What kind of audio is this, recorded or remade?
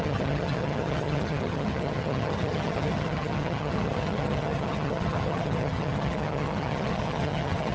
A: remade